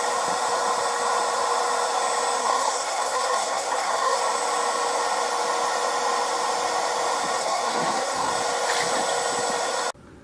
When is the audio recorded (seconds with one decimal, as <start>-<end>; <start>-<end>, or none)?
0.0-2.4; 4.2-7.4; 8.3-10.2